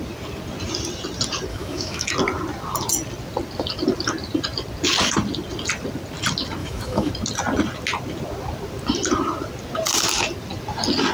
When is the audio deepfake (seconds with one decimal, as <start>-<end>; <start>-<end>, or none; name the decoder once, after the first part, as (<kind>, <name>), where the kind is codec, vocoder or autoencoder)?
1.5-2.1 (autoencoder, DAC-VAE); 6.6-7.1